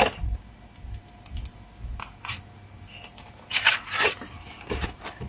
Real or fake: real